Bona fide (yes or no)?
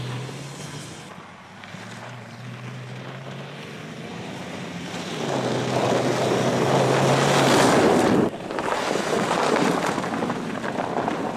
yes